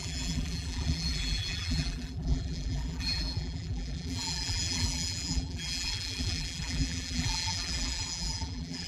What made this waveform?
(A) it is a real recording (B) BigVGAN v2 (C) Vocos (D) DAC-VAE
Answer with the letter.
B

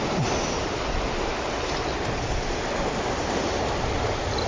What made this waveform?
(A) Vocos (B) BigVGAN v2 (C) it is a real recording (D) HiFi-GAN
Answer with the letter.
C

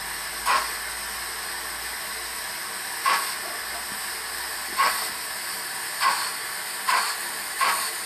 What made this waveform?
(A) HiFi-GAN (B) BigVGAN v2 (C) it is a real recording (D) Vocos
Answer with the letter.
C